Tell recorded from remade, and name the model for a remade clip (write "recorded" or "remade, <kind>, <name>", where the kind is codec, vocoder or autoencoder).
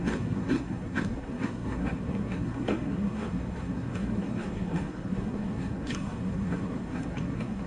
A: remade, codec, SNAC